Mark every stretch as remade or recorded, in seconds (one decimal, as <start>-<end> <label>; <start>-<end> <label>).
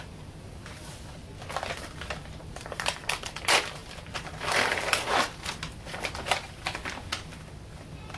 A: 0.0-1.2 remade; 1.2-2.4 recorded; 2.4-6.8 remade; 6.8-7.4 recorded; 7.4-8.2 remade